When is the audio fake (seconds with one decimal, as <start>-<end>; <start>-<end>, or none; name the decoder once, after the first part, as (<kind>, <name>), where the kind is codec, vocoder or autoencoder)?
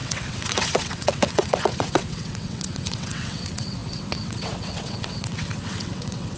0.0-6.4 (vocoder, WaveNeXt)